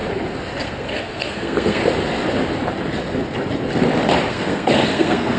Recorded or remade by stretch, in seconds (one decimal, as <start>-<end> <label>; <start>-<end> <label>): 0.0-0.6 recorded; 0.6-1.8 remade; 1.8-4.3 recorded; 4.3-5.4 remade